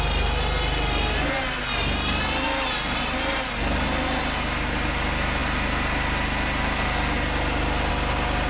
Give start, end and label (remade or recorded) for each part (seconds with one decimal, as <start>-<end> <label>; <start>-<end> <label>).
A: 0.0-8.5 recorded